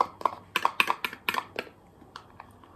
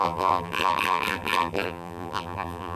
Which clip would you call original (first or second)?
first